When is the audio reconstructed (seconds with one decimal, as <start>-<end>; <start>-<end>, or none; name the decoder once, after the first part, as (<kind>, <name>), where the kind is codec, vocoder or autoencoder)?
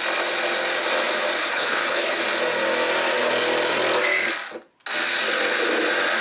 1.4-2.2 (codec, HILCodec)